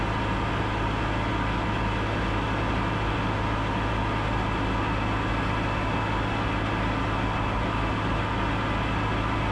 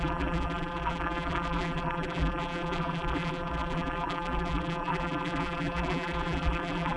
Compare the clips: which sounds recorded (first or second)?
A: first